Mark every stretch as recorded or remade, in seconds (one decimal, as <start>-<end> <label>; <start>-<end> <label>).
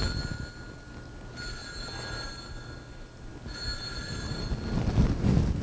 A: 0.0-5.6 recorded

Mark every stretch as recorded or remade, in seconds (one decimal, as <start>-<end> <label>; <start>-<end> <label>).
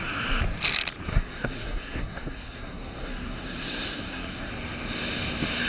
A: 0.0-1.1 recorded; 1.1-4.5 remade; 4.5-5.7 recorded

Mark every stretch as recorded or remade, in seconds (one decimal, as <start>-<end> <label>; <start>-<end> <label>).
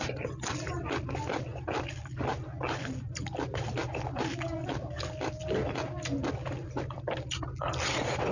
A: 0.0-8.3 recorded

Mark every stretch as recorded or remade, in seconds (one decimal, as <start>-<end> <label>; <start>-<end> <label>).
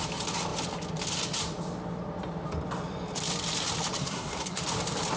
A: 0.0-4.0 recorded; 4.0-4.6 remade; 4.6-5.2 recorded